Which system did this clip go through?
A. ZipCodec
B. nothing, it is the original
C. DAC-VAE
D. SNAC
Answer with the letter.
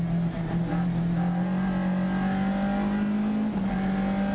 B